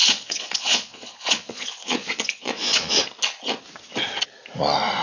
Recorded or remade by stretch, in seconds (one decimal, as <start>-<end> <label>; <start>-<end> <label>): 0.0-3.0 remade; 3.0-5.0 recorded

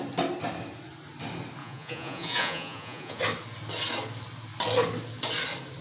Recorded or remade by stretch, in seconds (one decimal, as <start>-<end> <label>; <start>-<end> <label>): 0.0-1.6 recorded; 1.6-3.2 remade; 3.2-5.8 recorded

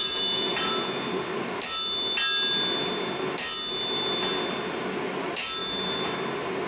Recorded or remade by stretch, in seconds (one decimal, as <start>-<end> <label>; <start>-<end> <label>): 0.0-0.7 remade; 0.7-6.7 recorded

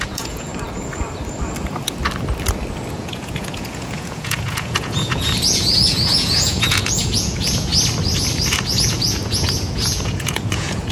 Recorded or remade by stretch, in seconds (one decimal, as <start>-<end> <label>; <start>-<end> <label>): 0.0-0.5 remade; 0.5-2.9 recorded; 2.9-7.7 remade; 7.7-8.6 recorded; 8.6-10.9 remade

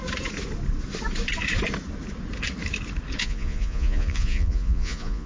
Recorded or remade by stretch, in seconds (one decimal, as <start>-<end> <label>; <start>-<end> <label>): 0.0-3.2 recorded; 3.2-5.3 remade

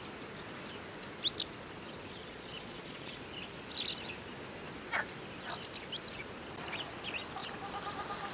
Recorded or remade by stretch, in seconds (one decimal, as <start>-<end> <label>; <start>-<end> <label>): 0.0-2.2 recorded; 2.2-3.2 remade; 3.2-8.3 recorded

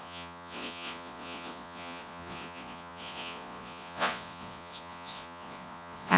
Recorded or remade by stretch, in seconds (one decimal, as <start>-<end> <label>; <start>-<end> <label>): 0.0-6.2 remade